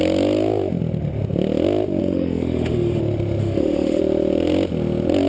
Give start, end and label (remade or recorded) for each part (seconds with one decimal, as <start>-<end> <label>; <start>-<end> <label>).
0.0-2.0 recorded; 2.0-3.0 remade; 3.0-3.4 recorded; 3.4-4.0 remade; 4.0-5.3 recorded